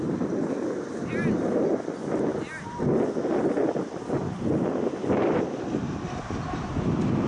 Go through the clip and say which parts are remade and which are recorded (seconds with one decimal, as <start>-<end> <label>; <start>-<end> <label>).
0.0-7.3 recorded